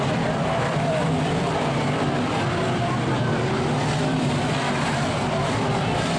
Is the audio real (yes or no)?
no